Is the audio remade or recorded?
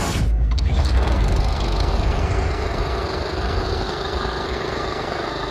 remade